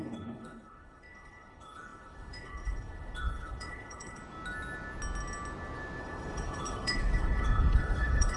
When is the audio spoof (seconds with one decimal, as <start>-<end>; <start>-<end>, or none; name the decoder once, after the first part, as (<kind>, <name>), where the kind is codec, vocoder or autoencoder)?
0.0-4.2 (codec, HILCodec); 6.0-8.4